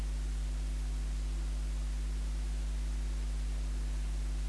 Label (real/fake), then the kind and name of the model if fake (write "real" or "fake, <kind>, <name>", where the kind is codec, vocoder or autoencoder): real